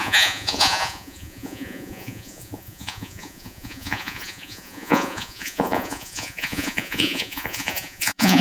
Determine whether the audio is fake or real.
fake